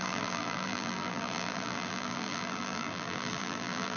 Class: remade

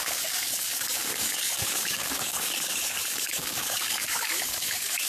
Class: remade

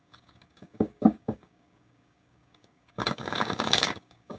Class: remade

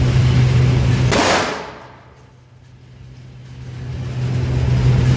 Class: recorded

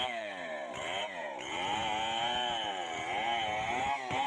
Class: remade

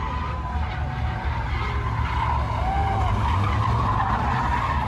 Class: recorded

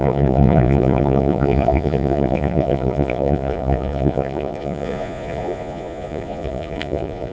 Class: remade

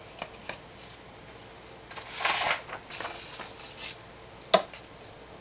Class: recorded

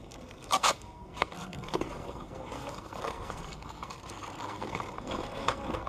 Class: remade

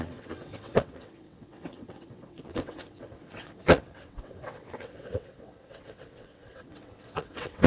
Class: remade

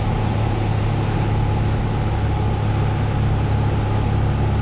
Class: recorded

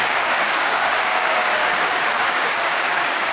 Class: remade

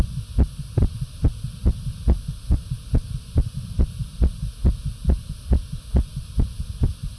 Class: recorded